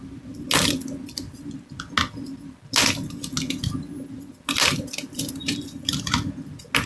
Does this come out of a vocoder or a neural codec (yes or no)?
no